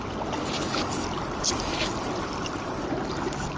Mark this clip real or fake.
real